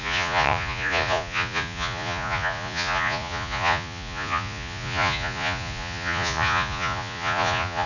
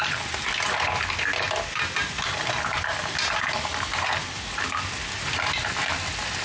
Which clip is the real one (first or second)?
second